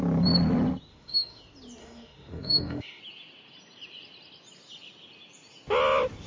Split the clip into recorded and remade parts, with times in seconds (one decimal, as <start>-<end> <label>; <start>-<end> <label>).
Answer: 0.0-0.9 recorded; 0.9-1.4 remade; 1.4-1.8 recorded; 1.8-3.0 remade; 3.0-6.3 recorded